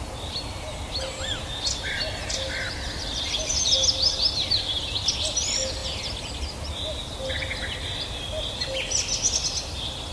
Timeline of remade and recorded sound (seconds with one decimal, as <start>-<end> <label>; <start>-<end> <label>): 0.0-10.1 recorded